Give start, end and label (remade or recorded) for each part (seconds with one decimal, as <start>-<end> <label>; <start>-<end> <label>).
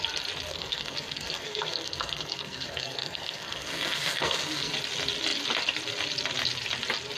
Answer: 0.0-0.5 recorded; 0.5-4.7 remade; 4.7-7.2 recorded